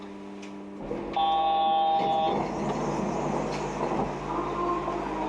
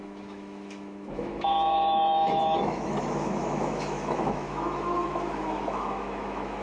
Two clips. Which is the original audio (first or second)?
first